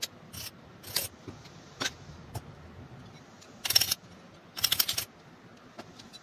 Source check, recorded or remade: recorded